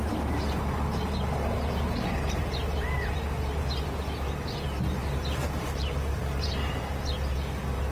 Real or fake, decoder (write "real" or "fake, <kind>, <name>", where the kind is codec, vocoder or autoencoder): fake, vocoder, BigVGAN v2